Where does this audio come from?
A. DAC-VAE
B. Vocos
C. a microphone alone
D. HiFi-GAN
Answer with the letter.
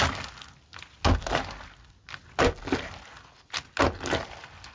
C